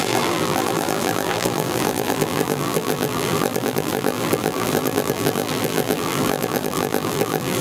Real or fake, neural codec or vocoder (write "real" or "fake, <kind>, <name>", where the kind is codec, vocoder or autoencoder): fake, vocoder, BigVGAN v2